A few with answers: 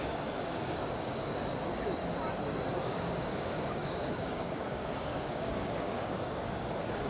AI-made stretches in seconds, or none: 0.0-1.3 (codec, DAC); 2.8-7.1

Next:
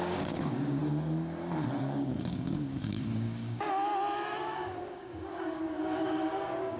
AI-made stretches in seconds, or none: 0.0-0.8 (codec, DAC); 1.8-3.9; 4.4-6.8

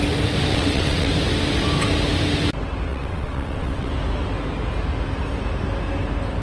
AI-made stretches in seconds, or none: 0.5-1.1 (vocoder, WaveNeXt); 2.9-3.9

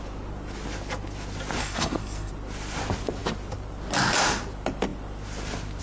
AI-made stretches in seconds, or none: 1.6-2.3 (codec, SNAC)

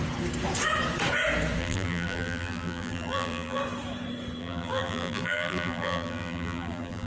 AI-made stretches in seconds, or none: 1.6-3.6 (vocoder, BigVGAN v2); 4.4-7.1